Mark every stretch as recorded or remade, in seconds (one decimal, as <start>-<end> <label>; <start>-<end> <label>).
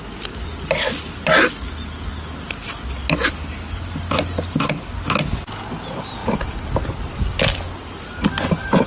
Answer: 0.0-8.9 recorded